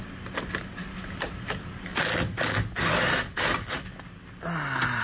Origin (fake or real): real